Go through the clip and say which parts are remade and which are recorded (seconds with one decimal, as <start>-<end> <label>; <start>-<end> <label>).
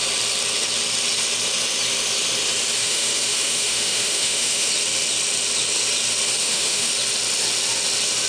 0.0-2.8 recorded; 2.8-4.7 remade; 4.7-6.4 recorded; 6.4-6.9 remade; 6.9-8.3 recorded